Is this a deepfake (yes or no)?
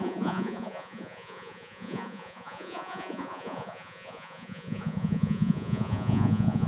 yes